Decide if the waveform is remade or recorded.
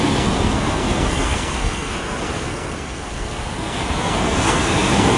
remade